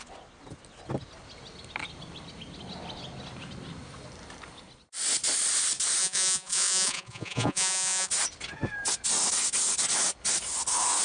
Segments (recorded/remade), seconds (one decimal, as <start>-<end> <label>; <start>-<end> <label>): 0.0-6.0 recorded; 6.0-8.1 remade; 8.1-11.0 recorded